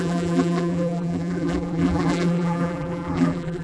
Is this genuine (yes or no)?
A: no